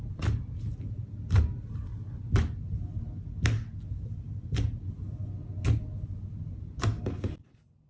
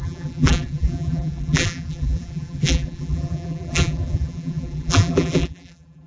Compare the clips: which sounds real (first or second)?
first